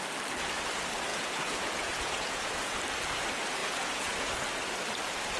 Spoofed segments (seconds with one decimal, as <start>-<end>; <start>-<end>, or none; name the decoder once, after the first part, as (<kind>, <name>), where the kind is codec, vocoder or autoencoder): 1.1-2.8 (vocoder, Vocos); 3.6-4.1